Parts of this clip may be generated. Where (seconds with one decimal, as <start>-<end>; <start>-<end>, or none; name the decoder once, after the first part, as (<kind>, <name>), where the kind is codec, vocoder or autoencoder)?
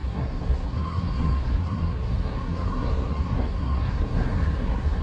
0.0-5.0 (codec, SNAC)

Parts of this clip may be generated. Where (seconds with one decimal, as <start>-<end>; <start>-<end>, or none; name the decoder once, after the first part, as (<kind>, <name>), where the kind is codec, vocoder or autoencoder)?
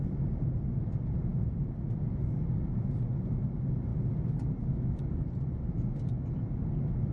none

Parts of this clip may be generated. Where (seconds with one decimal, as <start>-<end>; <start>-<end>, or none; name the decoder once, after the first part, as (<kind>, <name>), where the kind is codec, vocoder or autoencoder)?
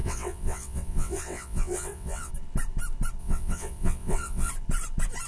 0.0-2.3 (vocoder, WaveNeXt); 3.2-4.5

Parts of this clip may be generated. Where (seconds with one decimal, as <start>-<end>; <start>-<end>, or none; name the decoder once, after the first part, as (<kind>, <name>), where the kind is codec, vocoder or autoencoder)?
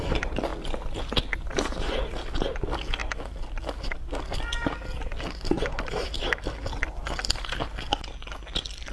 none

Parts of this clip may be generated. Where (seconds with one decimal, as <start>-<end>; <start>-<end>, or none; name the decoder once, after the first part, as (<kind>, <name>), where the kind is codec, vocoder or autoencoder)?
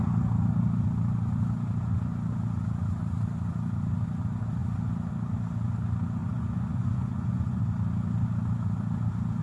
6.2-7.6 (vocoder, Vocos)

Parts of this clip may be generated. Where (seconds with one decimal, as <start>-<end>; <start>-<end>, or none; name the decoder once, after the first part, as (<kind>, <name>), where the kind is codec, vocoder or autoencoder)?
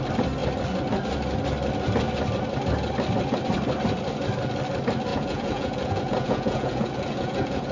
5.1-7.7 (vocoder, Vocos)